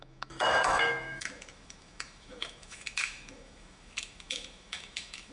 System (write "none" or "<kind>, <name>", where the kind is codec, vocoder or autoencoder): autoencoder, DAC-VAE